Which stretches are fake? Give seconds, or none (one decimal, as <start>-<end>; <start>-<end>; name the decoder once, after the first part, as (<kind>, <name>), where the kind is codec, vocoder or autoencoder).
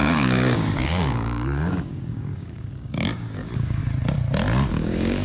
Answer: 0.0-3.8 (codec, DAC); 4.7-5.2